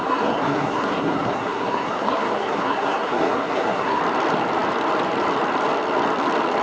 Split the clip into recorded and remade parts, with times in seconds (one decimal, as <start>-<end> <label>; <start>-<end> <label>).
0.0-4.0 remade; 4.0-6.6 recorded